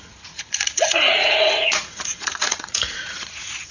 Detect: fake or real fake